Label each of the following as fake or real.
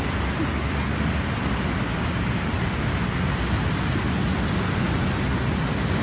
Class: real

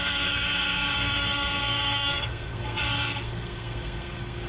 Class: fake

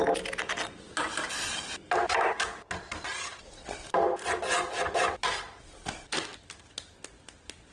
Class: real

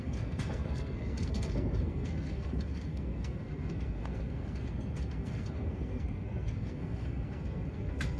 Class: fake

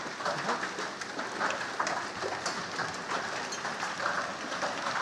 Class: real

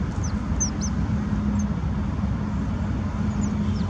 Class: real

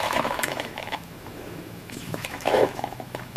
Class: fake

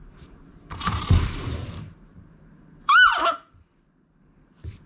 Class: fake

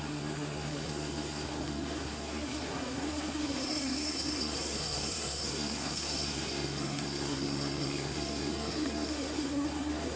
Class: fake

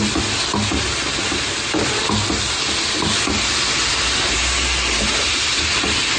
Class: real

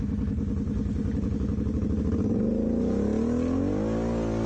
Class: real